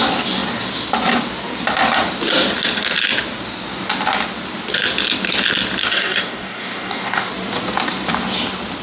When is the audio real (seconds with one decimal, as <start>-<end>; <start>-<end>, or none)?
0.0-5.8; 7.3-8.8